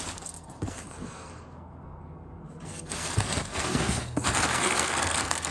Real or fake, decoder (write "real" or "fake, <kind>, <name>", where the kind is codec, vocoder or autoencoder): fake, codec, SNAC